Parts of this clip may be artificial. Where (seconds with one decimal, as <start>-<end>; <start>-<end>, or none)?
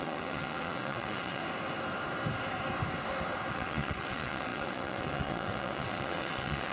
0.0-1.4; 3.5-6.7